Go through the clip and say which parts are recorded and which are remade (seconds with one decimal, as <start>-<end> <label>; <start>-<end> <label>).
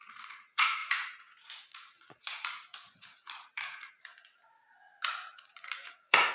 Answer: 0.0-6.3 remade